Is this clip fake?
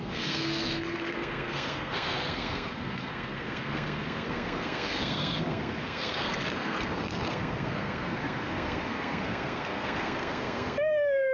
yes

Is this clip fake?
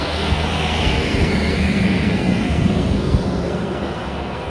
yes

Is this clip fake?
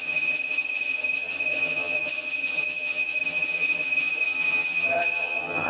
yes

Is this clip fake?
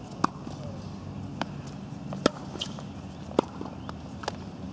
no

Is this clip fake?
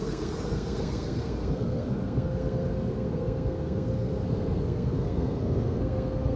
yes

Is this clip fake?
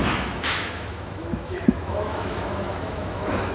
yes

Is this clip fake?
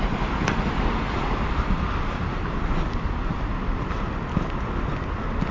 no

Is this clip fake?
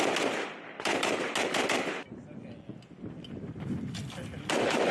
no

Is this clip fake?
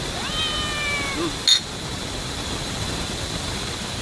no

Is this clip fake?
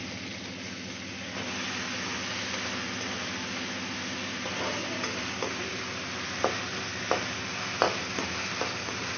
no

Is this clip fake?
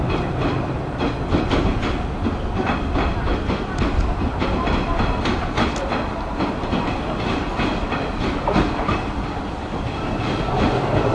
no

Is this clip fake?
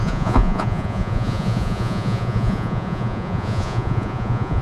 yes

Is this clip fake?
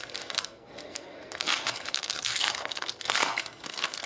yes